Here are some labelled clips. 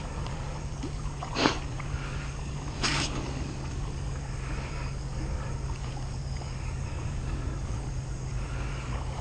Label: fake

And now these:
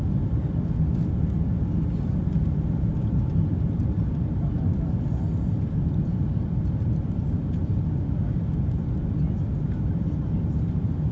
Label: real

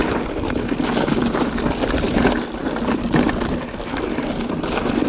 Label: real